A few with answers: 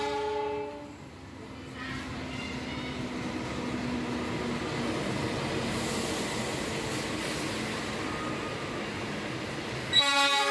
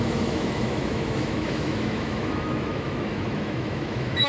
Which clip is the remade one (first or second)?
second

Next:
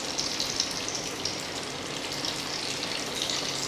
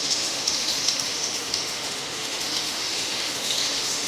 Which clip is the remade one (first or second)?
second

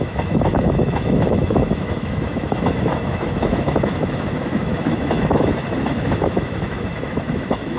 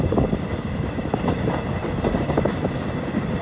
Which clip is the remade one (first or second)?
first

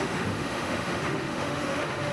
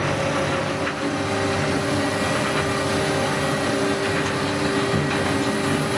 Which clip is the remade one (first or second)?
first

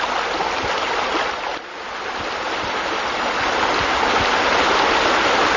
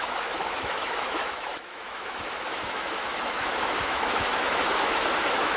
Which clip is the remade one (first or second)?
second